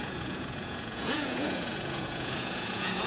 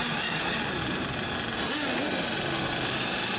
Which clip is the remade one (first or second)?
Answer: first